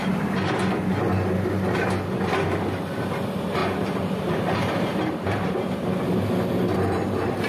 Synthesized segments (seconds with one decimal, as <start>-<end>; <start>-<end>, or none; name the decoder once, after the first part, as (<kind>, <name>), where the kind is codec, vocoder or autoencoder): 0.0-0.6 (vocoder, BigVGAN v2); 3.6-5.5